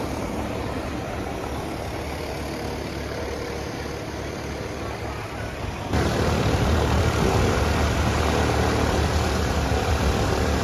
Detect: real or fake real